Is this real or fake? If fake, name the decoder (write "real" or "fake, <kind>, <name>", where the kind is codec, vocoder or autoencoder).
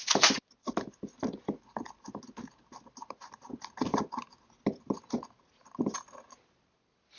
real